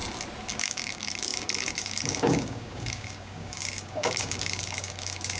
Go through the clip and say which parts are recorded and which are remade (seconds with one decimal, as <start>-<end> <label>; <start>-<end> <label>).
0.0-0.6 recorded; 0.6-5.4 remade